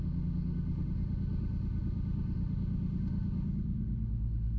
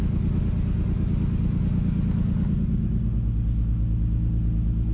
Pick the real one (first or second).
second